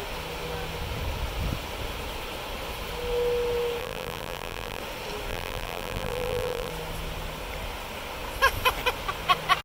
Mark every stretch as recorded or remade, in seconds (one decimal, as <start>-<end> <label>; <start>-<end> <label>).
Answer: 0.0-3.8 recorded; 3.8-4.8 remade; 4.8-5.3 recorded; 5.3-6.7 remade; 6.7-9.6 recorded